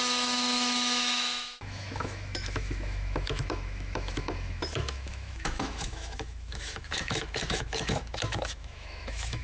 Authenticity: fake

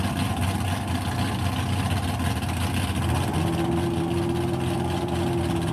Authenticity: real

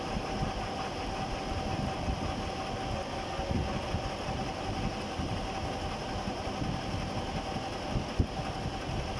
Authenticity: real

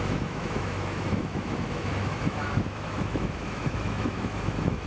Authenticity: fake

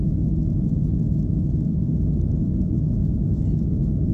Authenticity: fake